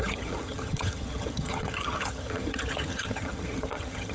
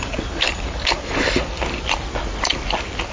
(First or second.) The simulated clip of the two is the first